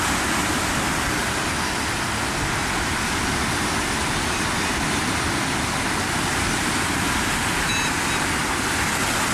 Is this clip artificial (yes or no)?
no